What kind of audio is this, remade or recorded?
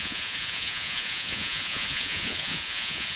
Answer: remade